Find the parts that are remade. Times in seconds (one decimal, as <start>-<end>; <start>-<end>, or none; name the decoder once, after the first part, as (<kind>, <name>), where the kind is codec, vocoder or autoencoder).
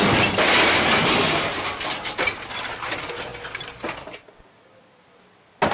none